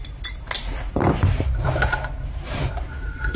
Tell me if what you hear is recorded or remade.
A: recorded